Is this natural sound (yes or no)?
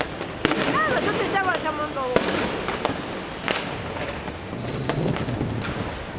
yes